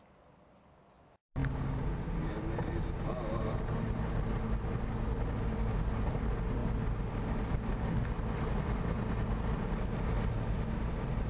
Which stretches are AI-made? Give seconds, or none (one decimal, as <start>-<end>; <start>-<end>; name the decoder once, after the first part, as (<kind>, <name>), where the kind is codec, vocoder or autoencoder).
none